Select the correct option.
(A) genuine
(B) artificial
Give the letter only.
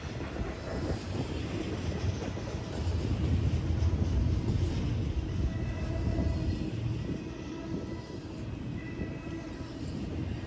A